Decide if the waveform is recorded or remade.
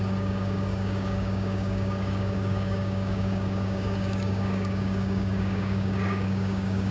remade